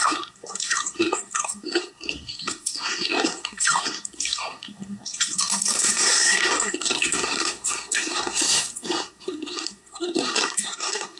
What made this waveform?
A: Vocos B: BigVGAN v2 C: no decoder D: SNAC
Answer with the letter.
D